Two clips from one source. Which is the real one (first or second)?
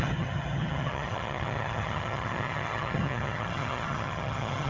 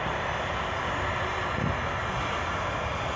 second